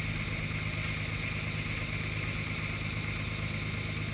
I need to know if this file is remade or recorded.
recorded